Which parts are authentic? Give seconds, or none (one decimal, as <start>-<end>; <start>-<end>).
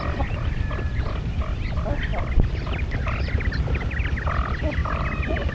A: 4.8-5.5